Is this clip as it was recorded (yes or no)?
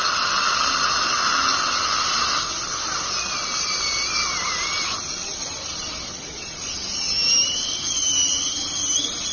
yes